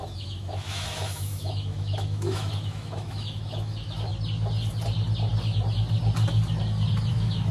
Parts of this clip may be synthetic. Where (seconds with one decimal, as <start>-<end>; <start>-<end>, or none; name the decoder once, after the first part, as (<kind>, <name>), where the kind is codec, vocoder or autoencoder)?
0.0-4.1 (autoencoder, DAC-VAE); 7.1-7.5